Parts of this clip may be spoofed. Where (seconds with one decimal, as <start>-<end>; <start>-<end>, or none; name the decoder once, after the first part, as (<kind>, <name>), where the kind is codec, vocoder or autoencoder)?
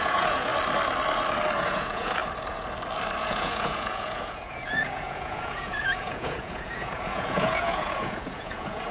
0.0-0.5 (vocoder, Vocos); 1.6-2.2; 3.2-8.9